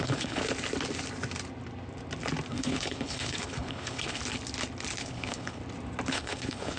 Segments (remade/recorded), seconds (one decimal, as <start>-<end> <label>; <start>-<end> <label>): 0.0-0.4 remade; 0.4-2.5 recorded; 2.5-4.2 remade; 4.2-5.0 recorded; 5.0-5.6 remade; 5.6-6.1 recorded; 6.1-6.8 remade